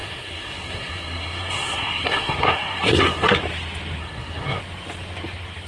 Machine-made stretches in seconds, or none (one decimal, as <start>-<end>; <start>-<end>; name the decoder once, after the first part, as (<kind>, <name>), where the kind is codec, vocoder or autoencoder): 0.0-3.4 (codec, SNAC); 4.0-4.6